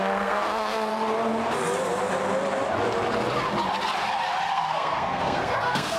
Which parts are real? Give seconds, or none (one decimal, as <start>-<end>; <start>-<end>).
0.9-4.5